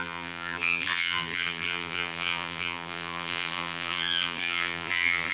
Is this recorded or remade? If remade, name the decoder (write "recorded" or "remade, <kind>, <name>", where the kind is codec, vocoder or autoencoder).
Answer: remade, vocoder, BigVGAN v2